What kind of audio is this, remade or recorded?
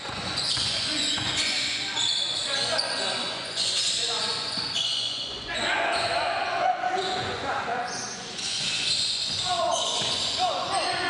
remade